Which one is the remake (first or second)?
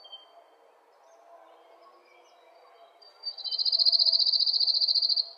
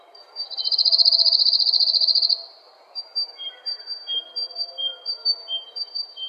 second